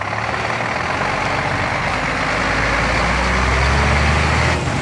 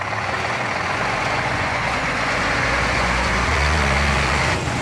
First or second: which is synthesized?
second